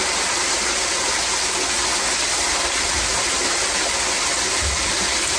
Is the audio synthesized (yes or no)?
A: no